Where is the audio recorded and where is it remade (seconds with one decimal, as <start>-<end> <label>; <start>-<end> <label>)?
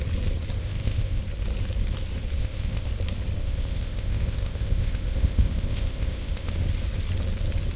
0.0-0.6 recorded; 0.6-1.2 remade; 1.2-2.4 recorded; 2.4-2.9 remade; 2.9-3.4 recorded; 3.4-6.5 remade; 6.5-7.8 recorded